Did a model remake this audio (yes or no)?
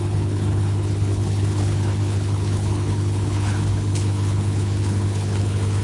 yes